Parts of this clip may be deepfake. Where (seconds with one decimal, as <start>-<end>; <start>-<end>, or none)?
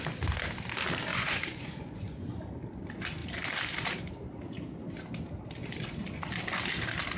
1.1-2.3